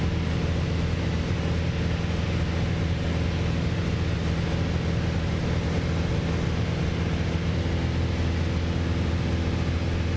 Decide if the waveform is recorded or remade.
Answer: recorded